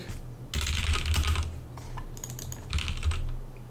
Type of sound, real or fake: real